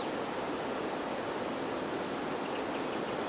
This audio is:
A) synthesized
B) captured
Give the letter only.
B